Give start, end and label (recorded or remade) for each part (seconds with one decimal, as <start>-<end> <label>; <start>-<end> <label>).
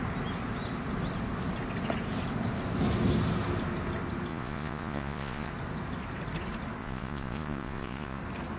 0.0-4.3 recorded; 4.3-5.5 remade; 5.5-6.8 recorded; 6.8-8.2 remade; 8.2-8.6 recorded